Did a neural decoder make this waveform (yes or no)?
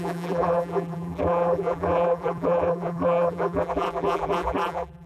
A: yes